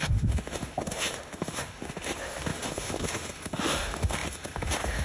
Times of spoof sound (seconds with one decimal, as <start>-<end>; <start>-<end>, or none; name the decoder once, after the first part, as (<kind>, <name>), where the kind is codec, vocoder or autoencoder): 0.0-5.0 (autoencoder, DAC-VAE)